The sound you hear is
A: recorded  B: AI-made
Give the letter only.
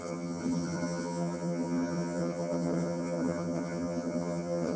B